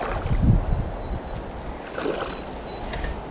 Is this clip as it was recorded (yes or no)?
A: yes